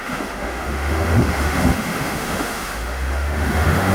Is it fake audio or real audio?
fake